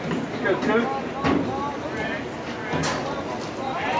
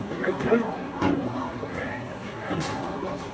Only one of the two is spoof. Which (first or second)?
second